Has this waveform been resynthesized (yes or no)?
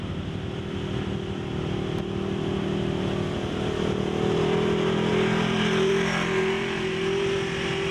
yes